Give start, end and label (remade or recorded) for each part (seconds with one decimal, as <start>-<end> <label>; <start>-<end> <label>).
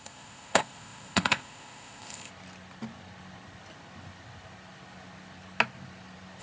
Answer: 0.0-2.3 remade; 2.3-6.4 recorded